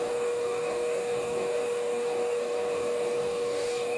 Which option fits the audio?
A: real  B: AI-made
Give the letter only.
B